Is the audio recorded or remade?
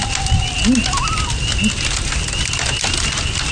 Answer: recorded